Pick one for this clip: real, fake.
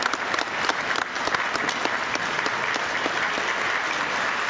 real